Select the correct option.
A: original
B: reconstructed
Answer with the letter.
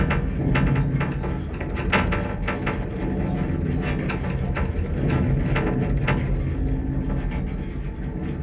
A